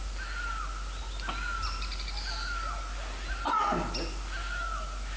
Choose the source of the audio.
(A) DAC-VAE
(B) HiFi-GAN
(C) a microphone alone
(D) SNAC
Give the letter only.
C